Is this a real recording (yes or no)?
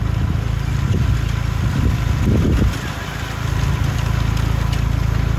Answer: yes